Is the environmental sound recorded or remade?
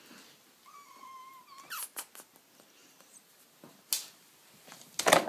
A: recorded